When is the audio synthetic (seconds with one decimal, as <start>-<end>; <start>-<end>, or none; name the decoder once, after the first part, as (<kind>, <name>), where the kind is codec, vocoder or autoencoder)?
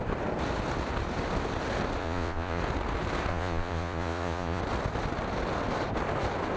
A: 2.0-2.6 (vocoder, Vocos); 3.3-4.6